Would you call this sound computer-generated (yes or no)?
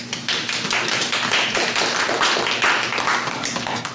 no